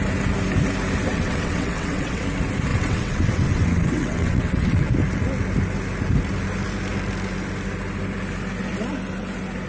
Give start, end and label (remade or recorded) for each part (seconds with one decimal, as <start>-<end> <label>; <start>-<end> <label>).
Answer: 0.0-1.1 recorded; 1.1-2.2 remade; 2.2-2.7 recorded; 2.7-4.9 remade; 4.9-9.7 recorded